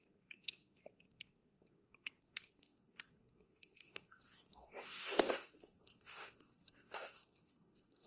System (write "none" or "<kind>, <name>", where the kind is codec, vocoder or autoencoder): codec, SNAC